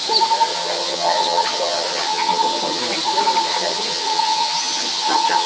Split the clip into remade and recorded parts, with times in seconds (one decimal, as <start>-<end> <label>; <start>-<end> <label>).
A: 0.0-0.5 recorded; 0.5-2.8 remade; 2.8-3.5 recorded; 3.5-5.5 remade